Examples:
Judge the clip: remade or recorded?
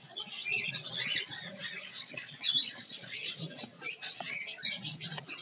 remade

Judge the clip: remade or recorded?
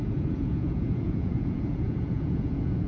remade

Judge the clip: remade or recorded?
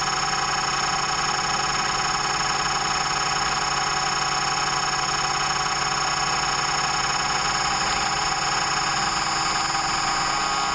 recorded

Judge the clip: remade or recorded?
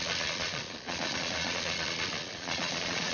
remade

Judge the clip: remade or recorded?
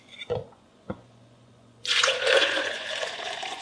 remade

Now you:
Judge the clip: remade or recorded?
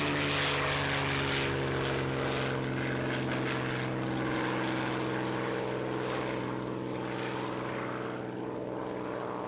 recorded